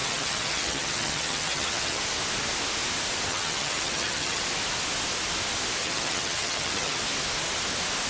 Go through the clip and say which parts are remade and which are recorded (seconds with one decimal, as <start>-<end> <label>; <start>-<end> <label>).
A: 0.0-2.0 remade; 2.0-3.3 recorded; 3.3-4.4 remade; 4.4-5.8 recorded; 5.8-7.0 remade; 7.0-8.1 recorded